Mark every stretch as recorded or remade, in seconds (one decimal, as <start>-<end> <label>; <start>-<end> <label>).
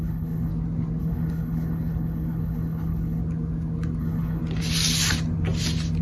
0.0-0.5 remade; 0.5-1.0 recorded; 1.0-3.2 remade; 3.2-4.0 recorded; 4.0-4.4 remade; 4.4-6.0 recorded